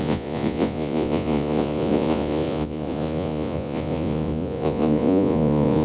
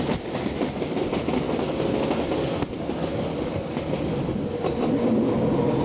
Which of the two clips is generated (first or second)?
first